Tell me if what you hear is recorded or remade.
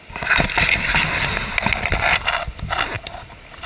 recorded